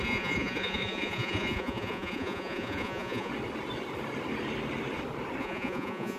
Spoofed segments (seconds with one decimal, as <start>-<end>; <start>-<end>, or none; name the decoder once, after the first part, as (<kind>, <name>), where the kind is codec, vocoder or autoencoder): 0.0-3.3 (vocoder, Vocos); 5.4-6.2